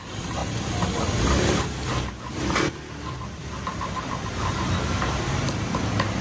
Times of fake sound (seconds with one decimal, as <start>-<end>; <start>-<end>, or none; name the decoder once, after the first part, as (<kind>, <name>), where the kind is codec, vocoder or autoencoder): none